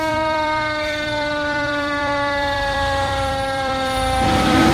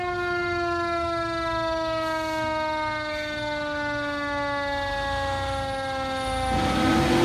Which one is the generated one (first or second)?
first